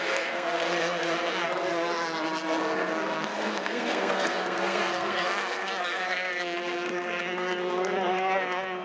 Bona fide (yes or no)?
no